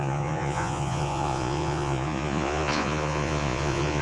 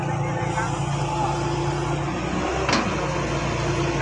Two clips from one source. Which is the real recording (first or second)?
second